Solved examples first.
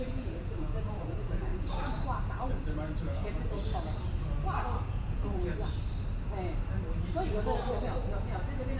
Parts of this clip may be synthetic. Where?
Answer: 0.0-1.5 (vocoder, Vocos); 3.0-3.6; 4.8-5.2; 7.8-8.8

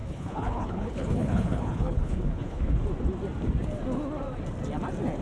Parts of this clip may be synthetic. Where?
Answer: 0.0-2.8 (codec, HILCodec)

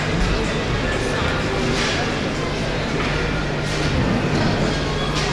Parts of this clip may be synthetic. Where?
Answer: 2.6-3.6 (vocoder, BigVGAN v2)